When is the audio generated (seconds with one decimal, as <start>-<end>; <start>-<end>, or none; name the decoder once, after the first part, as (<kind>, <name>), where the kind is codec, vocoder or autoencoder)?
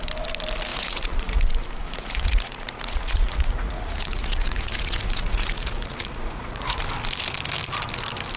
0.7-1.4 (vocoder, Vocos); 1.8-6.8